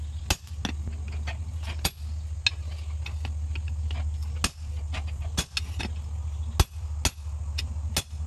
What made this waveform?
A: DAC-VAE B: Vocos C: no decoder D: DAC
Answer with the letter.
C